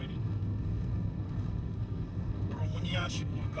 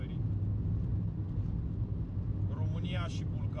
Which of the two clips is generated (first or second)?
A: first